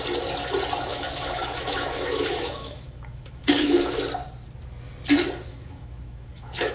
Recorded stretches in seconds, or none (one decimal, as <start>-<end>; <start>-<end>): 0.0-0.9; 4.0-5.5